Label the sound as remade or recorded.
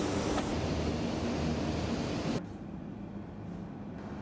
recorded